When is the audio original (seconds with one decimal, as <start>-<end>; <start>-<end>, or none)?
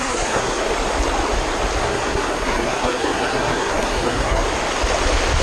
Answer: 0.6-1.8; 4.4-5.4